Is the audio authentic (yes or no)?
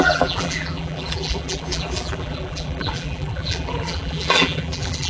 no